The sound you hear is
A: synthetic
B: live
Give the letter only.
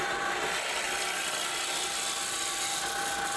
B